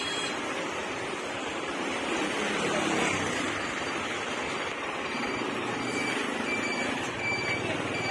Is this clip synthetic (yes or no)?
yes